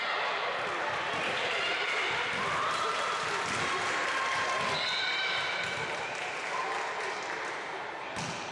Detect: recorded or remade recorded